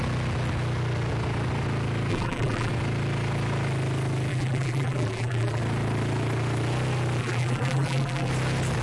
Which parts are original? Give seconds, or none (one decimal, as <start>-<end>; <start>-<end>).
0.0-2.1; 2.7-4.3; 5.6-7.2; 8.3-8.8